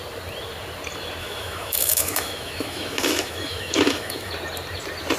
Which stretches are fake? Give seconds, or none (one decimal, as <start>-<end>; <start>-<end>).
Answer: 1.2-4.3